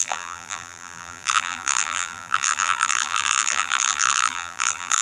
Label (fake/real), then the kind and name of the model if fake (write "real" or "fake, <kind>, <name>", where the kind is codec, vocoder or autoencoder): fake, vocoder, BigVGAN v2